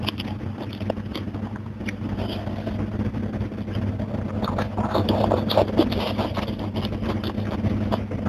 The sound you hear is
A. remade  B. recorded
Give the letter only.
B